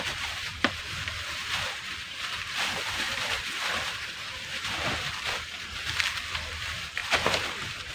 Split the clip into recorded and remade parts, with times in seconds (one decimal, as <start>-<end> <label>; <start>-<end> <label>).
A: 0.0-7.9 remade